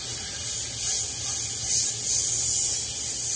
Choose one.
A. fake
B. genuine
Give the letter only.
B